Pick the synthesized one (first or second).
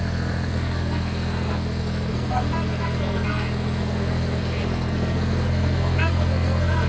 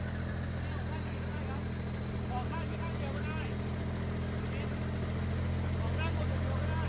first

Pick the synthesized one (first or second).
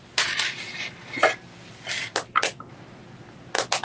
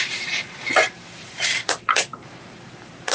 second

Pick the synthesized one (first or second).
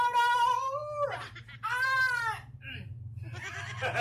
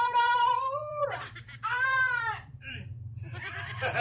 second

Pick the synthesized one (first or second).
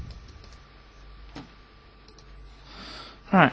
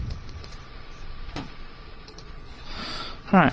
second